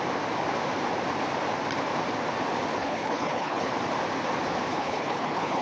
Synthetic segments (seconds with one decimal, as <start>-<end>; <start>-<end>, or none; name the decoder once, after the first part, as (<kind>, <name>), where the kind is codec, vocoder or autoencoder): 2.8-3.7 (codec, HILCodec); 4.7-5.6